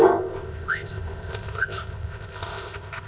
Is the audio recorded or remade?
remade